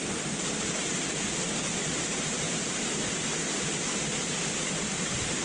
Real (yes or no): no